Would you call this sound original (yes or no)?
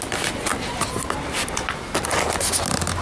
yes